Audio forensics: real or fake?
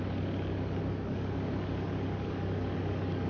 fake